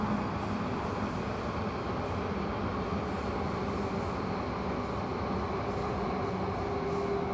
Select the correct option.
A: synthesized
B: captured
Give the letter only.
B